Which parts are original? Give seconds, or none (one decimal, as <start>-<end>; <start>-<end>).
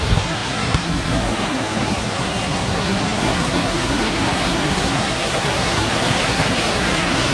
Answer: none